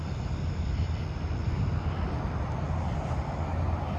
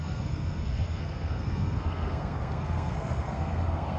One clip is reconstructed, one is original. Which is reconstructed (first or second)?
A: second